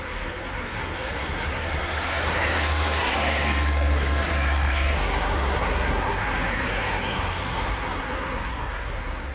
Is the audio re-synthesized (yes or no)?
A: yes